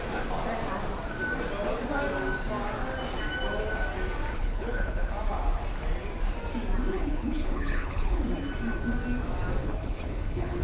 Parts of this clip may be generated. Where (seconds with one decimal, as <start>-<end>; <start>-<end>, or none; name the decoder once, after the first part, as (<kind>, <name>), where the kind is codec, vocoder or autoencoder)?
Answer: 4.3-5.1 (codec, HILCodec); 6.9-8.2; 9.6-10.6